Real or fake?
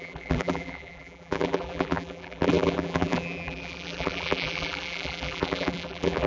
fake